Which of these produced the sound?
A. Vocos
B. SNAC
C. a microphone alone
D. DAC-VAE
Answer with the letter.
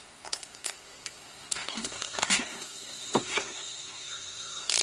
B